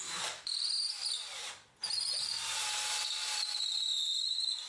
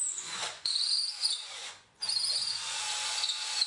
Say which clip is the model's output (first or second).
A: second